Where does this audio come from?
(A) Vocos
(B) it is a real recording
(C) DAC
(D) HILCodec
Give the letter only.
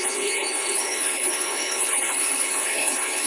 D